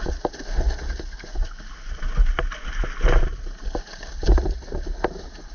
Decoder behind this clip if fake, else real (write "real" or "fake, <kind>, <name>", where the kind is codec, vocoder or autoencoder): real